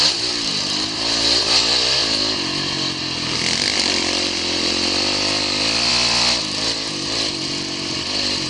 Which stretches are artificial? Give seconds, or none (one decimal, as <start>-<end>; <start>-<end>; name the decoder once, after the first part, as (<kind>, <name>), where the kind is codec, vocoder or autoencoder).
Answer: none